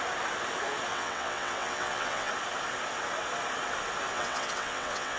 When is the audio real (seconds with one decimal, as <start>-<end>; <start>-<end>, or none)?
0.0-0.9; 2.3-4.1